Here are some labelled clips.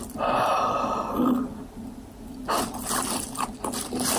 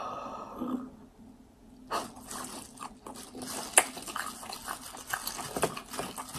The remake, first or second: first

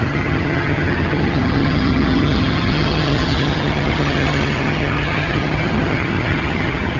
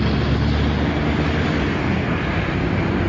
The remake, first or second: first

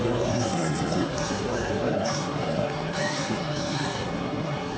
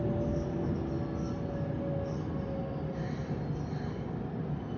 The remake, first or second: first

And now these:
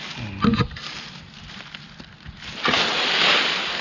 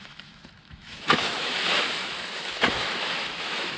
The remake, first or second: second